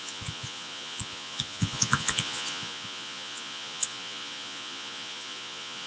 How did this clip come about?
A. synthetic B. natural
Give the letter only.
A